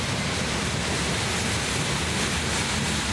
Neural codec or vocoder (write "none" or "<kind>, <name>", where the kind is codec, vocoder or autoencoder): none